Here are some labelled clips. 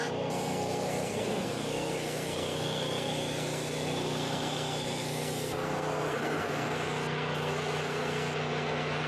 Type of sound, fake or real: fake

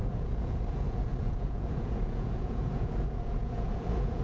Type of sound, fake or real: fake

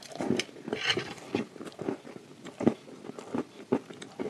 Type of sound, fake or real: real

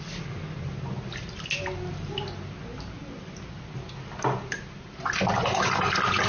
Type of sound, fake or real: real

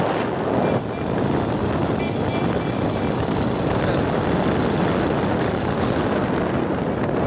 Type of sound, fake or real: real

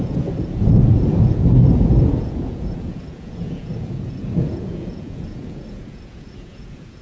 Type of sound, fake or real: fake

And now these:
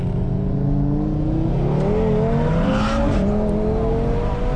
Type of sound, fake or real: real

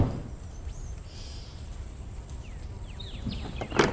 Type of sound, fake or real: fake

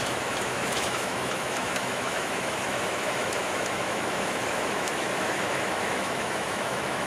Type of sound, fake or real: fake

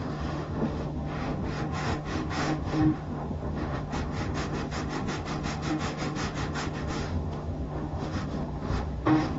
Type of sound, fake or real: fake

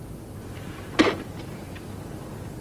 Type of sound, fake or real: real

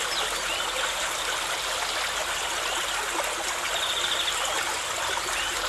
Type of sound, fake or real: real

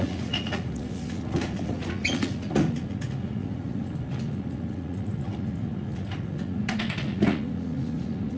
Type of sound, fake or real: fake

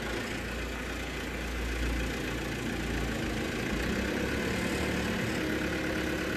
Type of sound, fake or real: real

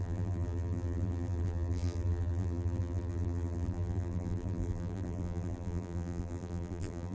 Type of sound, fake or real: fake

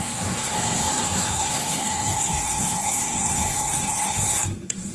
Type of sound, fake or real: fake